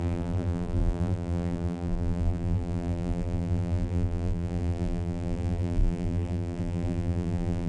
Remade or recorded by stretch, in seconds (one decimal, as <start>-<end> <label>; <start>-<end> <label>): 0.0-7.7 remade